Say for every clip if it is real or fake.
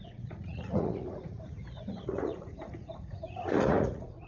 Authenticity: fake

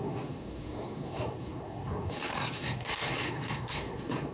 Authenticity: fake